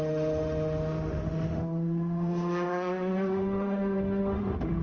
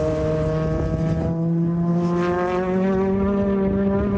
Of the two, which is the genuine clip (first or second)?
second